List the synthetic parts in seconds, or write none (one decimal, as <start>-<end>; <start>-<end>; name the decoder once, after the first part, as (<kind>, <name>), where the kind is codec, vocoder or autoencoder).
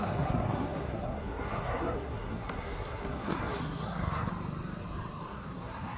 0.0-4.3 (codec, SNAC); 5.3-6.0